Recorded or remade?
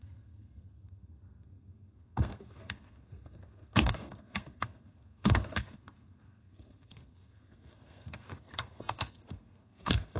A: remade